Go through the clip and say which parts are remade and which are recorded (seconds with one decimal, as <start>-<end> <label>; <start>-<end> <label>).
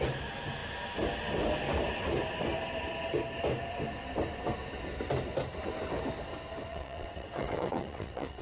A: 0.0-6.7 recorded; 6.7-8.4 remade